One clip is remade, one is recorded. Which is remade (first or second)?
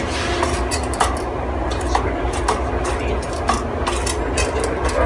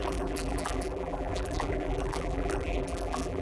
second